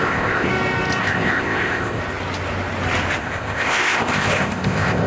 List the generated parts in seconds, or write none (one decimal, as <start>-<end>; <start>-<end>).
0.0-0.5; 1.0-2.0; 3.2-5.1